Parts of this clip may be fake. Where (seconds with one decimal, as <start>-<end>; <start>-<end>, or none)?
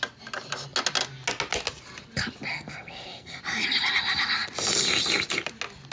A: 2.5-3.4